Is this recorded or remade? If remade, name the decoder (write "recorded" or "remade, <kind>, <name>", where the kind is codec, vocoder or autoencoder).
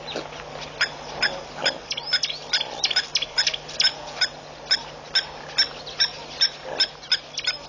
recorded